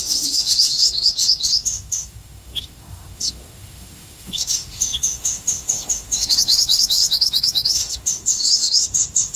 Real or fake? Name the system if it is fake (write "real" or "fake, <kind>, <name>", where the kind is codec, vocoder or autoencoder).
fake, autoencoder, DAC-VAE